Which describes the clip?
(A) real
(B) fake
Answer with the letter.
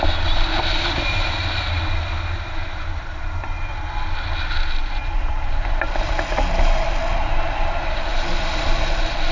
A